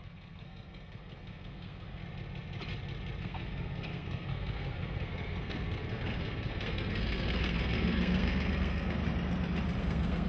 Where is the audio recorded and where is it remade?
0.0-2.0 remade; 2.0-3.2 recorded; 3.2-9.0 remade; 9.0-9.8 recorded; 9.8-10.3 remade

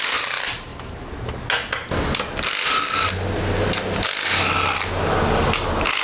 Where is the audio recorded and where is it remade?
0.0-6.0 recorded

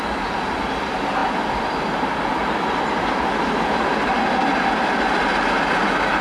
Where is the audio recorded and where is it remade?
0.0-6.2 recorded